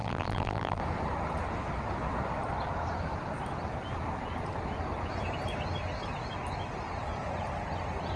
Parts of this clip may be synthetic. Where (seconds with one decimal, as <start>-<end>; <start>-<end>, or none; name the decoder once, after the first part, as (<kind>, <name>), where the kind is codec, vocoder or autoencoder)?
0.0-0.8 (vocoder, BigVGAN v2)